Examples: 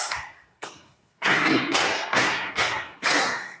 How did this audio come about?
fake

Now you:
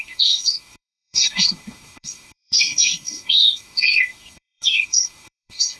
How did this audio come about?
fake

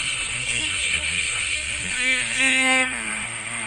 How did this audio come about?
fake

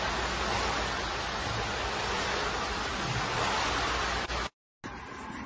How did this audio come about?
real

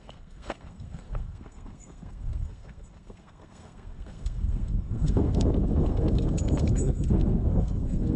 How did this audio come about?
fake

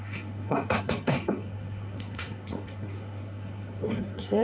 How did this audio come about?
fake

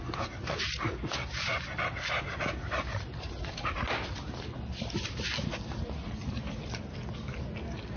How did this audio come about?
real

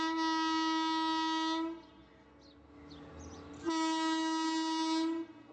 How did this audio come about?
real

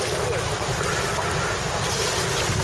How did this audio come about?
real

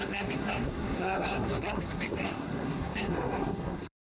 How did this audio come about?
fake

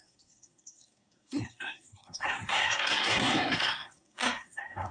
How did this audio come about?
fake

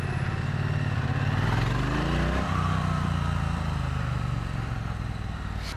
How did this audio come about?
real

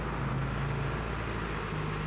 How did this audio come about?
real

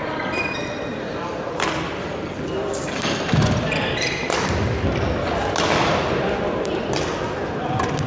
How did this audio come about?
real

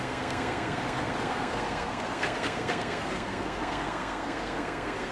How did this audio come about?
fake